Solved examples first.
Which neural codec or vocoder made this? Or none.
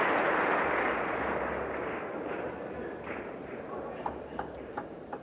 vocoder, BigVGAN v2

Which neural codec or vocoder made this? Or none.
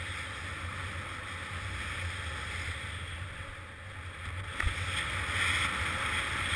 none